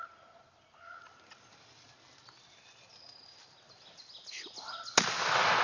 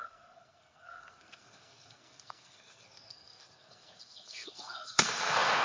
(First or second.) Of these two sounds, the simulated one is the second